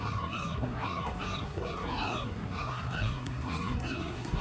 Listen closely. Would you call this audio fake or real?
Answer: fake